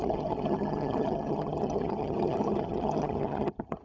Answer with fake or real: fake